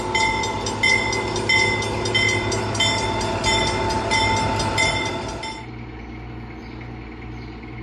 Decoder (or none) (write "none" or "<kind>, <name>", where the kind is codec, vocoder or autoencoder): none